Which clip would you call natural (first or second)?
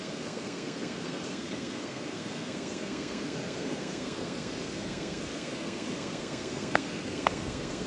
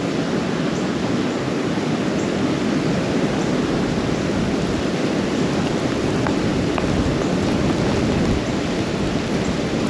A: second